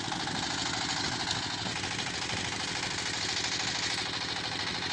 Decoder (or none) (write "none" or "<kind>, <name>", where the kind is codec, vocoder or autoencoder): none